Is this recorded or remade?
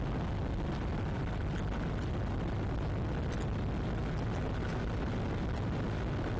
recorded